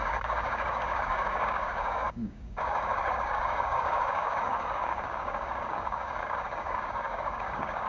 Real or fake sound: fake